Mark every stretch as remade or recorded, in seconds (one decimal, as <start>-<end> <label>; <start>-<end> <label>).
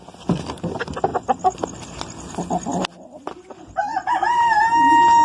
0.0-5.2 recorded